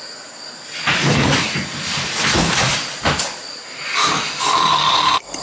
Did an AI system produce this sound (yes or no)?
no